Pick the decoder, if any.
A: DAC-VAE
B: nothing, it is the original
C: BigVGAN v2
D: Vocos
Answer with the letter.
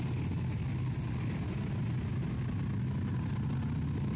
B